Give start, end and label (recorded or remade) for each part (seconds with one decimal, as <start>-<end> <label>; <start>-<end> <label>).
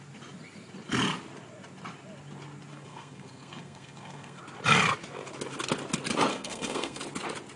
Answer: 0.0-2.7 recorded; 2.7-4.4 remade; 4.4-6.3 recorded; 6.3-7.0 remade; 7.0-7.6 recorded